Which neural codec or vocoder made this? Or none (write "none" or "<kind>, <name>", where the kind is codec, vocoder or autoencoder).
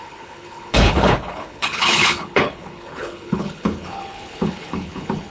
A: codec, HILCodec